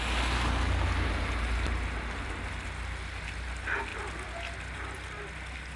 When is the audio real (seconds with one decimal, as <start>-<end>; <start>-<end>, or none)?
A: 0.0-5.8